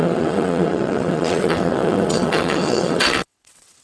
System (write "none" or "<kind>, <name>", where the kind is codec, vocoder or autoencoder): vocoder, WaveNeXt